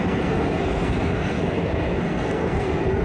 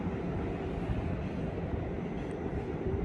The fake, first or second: first